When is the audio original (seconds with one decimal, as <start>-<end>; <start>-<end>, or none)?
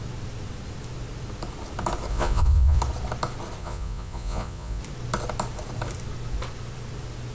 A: 0.0-2.1; 2.8-3.6; 4.8-7.3